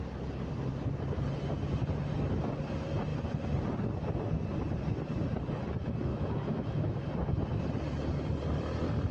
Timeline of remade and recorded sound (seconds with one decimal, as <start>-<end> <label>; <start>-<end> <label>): 0.0-6.1 recorded; 6.1-7.0 remade; 7.0-9.1 recorded